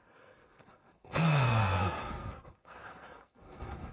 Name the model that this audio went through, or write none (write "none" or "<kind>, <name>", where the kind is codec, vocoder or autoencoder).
codec, SNAC